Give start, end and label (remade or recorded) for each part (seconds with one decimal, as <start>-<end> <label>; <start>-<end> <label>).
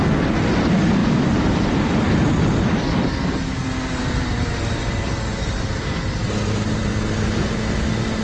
0.0-8.2 recorded